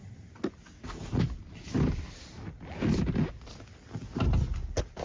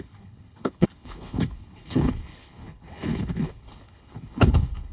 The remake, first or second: second